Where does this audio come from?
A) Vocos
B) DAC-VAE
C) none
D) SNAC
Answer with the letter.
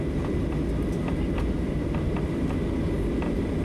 C